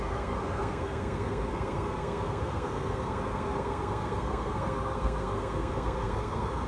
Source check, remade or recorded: remade